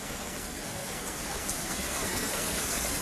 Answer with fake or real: fake